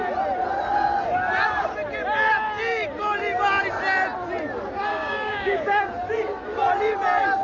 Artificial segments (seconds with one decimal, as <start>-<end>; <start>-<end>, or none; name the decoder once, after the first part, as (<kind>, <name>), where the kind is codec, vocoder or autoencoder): 4.9-5.9 (codec, DAC)